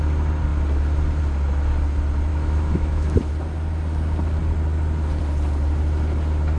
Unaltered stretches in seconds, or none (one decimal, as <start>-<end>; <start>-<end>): 0.0-2.3; 3.3-6.6